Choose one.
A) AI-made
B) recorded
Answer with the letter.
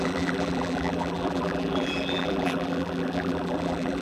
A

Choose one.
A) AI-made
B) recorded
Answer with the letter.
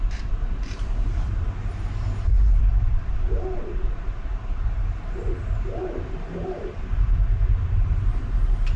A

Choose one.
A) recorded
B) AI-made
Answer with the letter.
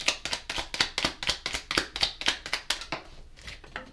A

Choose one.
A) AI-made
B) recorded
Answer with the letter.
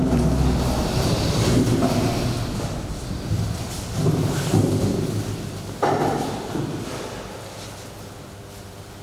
B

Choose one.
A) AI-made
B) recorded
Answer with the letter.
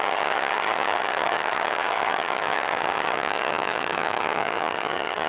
A